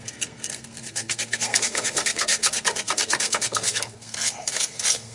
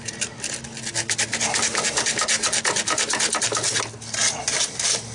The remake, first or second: first